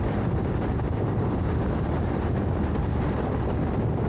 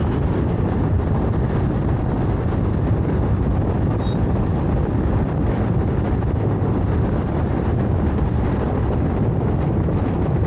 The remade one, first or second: second